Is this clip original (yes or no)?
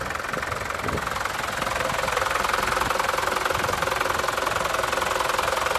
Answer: yes